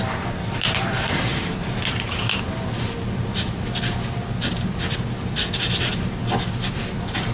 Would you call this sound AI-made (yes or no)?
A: no